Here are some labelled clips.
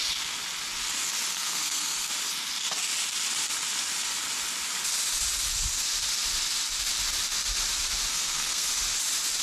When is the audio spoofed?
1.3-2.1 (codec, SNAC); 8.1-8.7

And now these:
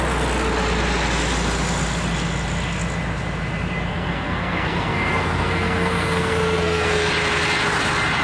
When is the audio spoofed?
3.9-7.1 (codec, SNAC)

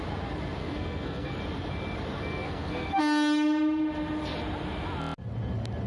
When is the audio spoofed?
0.6-1.4 (codec, SNAC); 2.2-3.0

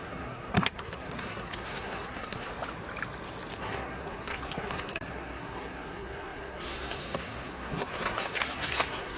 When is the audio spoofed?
0.0-2.5 (codec, SNAC); 3.6-9.2

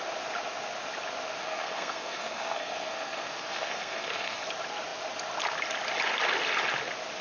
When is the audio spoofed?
1.4-4.4 (codec, SNAC)

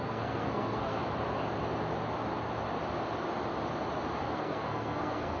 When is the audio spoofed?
0.0-1.0 (codec, SNAC); 4.2-5.4

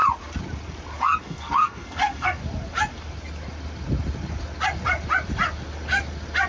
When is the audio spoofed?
1.2-2.4 (codec, SNAC)